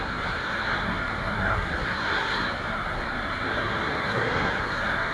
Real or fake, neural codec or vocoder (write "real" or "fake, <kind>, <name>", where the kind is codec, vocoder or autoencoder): fake, codec, SNAC